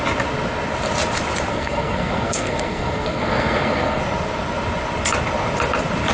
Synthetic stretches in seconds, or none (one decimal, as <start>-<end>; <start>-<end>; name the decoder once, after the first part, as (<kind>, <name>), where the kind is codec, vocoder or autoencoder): 1.5-4.0 (codec, SNAC)